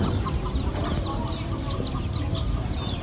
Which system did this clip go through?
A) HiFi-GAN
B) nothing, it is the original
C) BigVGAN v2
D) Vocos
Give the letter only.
B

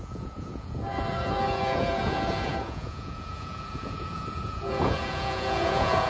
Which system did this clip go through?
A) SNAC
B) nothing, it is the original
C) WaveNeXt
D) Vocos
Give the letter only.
D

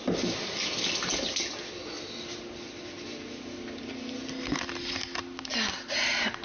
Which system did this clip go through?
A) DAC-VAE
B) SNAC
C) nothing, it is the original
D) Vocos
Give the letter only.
C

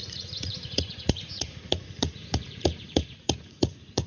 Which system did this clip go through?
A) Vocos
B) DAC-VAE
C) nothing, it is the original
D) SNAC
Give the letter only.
A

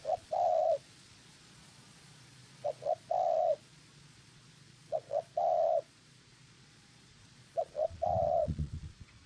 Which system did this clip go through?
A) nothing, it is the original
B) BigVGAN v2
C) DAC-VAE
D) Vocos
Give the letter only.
D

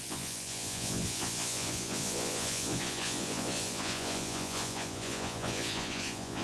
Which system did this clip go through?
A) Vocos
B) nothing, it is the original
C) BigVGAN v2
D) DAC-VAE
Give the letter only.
A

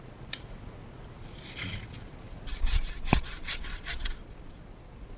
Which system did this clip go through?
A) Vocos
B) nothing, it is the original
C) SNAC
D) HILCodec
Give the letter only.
A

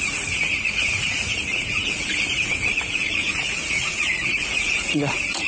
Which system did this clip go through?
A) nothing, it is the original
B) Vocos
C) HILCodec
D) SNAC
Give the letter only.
B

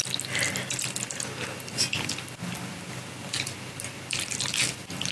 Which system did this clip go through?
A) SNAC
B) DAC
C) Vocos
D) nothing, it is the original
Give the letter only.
D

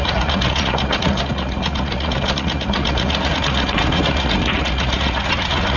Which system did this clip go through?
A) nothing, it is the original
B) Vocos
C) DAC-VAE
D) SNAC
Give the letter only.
B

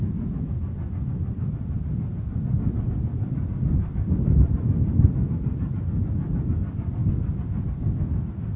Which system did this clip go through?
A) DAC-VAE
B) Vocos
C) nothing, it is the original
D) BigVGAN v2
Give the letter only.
C